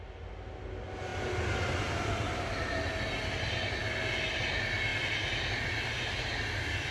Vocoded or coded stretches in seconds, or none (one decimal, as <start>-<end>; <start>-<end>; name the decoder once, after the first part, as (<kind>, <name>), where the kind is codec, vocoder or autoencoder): none